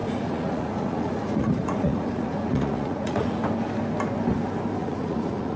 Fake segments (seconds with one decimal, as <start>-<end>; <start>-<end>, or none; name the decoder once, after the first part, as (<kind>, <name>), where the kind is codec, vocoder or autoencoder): 0.0-3.4 (vocoder, Vocos); 4.8-5.6